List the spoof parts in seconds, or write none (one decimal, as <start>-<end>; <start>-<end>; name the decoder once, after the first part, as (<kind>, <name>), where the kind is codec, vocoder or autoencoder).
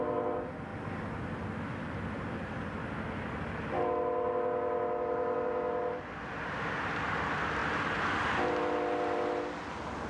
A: 7.6-8.2 (vocoder, BigVGAN v2)